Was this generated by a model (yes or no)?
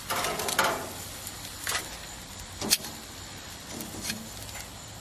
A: no